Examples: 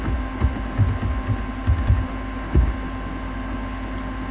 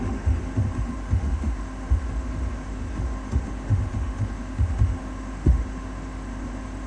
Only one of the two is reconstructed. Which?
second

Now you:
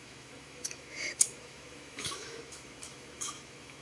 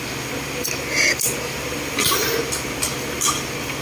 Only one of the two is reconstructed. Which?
first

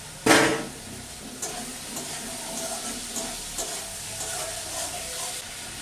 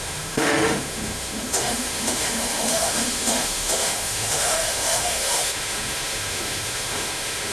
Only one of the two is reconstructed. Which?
second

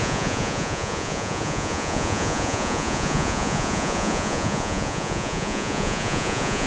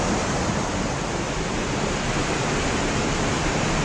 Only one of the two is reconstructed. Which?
first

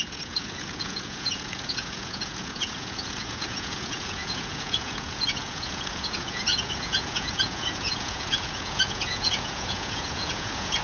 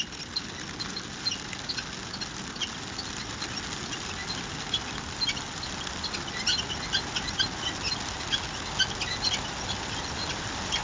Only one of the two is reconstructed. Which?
first